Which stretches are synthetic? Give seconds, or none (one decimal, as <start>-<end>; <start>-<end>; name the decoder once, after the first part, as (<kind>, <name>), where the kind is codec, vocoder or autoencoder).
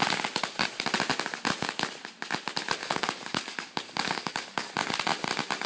2.8-4.7 (codec, DAC)